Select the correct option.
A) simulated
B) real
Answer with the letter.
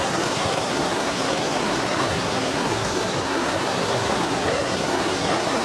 A